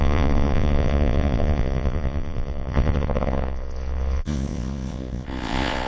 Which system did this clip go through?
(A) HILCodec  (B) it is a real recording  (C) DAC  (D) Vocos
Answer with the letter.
D